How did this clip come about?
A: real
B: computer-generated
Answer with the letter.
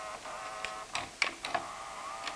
A